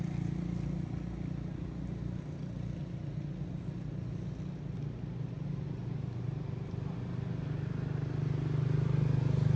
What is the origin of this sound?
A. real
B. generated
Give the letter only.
A